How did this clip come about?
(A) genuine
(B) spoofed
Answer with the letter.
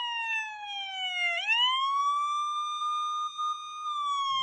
A